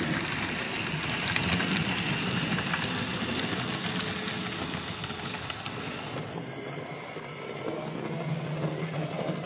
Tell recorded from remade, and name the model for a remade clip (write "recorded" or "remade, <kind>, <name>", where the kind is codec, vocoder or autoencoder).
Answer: recorded